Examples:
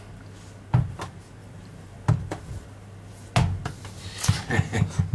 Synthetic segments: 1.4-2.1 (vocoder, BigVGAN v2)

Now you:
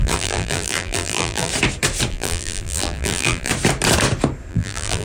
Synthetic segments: 0.0-1.5 (vocoder, BigVGAN v2); 2.1-3.5; 4.5-5.0

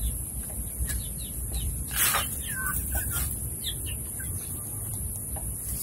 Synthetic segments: 0.0-3.5 (vocoder, BigVGAN v2)

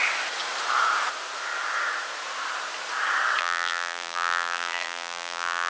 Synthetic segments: 3.4-5.7 (vocoder, BigVGAN v2)